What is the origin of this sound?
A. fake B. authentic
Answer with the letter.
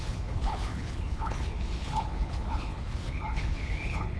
A